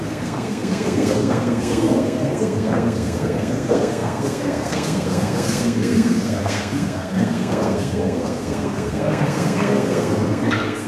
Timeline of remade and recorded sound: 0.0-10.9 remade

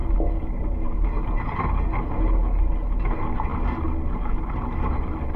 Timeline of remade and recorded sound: 0.0-5.4 recorded

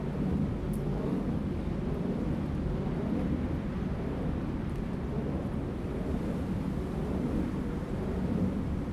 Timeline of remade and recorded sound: 0.0-0.9 recorded; 0.9-1.7 remade; 1.7-8.9 recorded

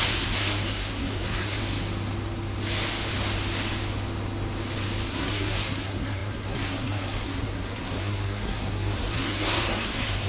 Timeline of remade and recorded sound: 0.0-1.6 remade; 1.6-5.1 recorded; 5.1-10.3 remade

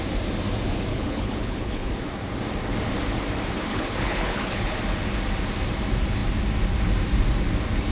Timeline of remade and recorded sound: 0.0-0.9 recorded; 0.9-1.9 remade; 1.9-3.7 recorded; 3.7-4.8 remade; 4.8-7.9 recorded

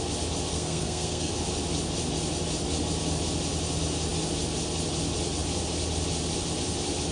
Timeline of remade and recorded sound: 0.0-0.5 recorded; 0.5-1.3 remade; 1.3-7.1 recorded